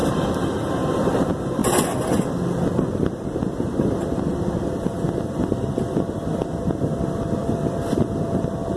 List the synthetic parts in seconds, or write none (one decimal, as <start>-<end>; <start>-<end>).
0.9-1.6; 4.7-8.8